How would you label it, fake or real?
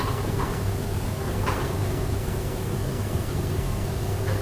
fake